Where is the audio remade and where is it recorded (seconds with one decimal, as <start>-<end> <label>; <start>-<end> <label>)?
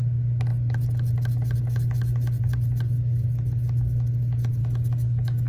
0.0-4.6 recorded; 4.6-5.5 remade